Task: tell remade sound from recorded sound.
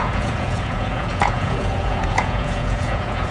remade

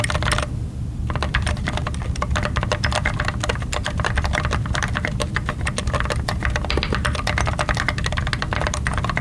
recorded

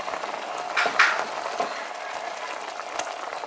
recorded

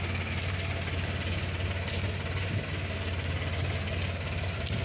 recorded